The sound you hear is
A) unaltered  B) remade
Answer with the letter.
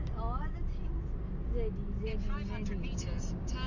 A